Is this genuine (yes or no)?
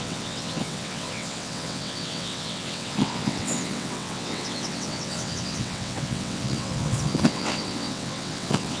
no